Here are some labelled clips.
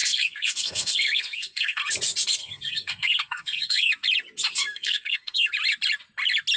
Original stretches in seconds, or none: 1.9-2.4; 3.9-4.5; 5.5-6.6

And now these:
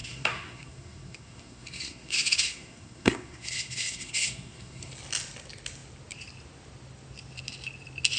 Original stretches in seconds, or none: 4.9-8.2

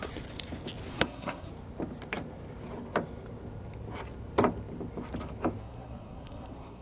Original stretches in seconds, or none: 0.0-0.9; 1.5-5.6

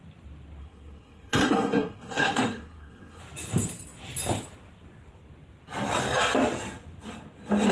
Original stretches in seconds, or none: 0.0-0.6; 3.2-7.7

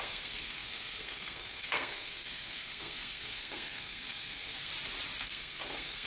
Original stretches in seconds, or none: 4.7-5.2

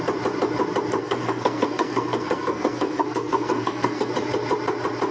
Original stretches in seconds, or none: 0.0-1.0; 4.1-5.1

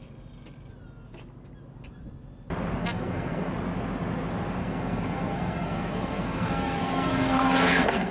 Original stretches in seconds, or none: 0.0-2.8; 3.5-4.6

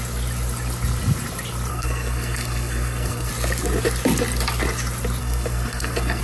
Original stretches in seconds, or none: 0.0-1.7; 3.3-5.2